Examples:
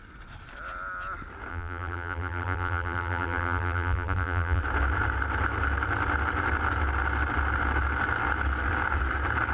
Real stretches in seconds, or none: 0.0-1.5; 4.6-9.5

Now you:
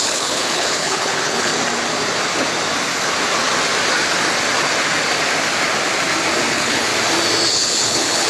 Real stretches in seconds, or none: 1.5-6.5; 6.9-7.5

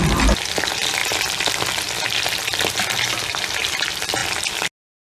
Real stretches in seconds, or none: 0.0-5.2